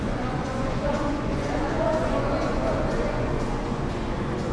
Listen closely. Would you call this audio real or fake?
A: fake